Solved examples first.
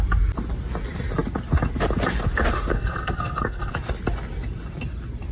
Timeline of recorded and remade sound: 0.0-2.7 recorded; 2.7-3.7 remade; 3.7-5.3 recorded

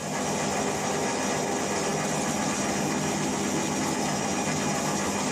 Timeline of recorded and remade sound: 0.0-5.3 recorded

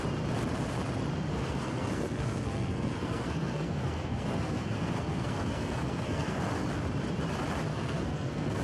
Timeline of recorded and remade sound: 0.0-1.3 recorded; 1.3-6.4 remade; 6.4-7.7 recorded; 7.7-8.6 remade

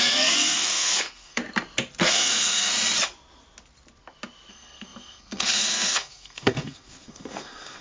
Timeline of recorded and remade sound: 0.0-1.4 remade; 1.4-2.0 recorded; 2.0-2.7 remade; 2.7-4.5 recorded; 4.5-7.8 remade

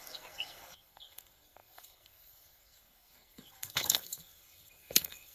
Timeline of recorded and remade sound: 0.0-5.3 remade